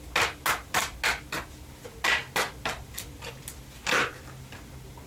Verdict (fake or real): real